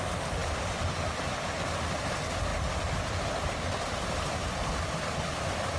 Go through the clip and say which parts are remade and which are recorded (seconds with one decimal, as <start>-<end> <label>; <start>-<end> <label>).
0.0-5.8 recorded